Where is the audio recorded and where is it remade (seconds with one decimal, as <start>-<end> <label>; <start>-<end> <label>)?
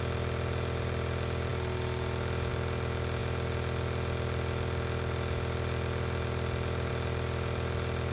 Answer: 0.0-8.1 recorded